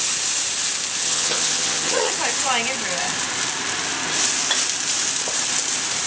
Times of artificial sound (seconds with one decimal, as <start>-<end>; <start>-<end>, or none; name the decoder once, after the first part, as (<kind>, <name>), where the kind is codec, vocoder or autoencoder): 1.0-2.1 (vocoder, HiFi-GAN)

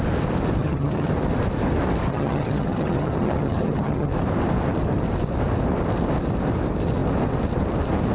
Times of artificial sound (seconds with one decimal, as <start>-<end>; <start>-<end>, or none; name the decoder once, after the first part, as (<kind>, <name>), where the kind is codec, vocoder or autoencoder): 0.6-1.1 (vocoder, HiFi-GAN); 2.1-4.1

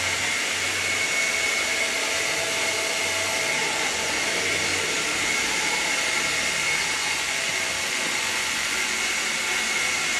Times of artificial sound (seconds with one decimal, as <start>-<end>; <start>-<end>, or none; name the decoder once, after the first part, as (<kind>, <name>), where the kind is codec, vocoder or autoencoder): 3.6-4.2 (vocoder, Vocos); 7.0-9.1

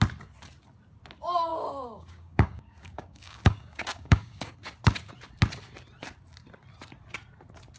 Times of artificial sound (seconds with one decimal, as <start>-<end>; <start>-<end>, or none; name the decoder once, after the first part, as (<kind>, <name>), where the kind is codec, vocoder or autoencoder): 1.5-4.5 (codec, DAC)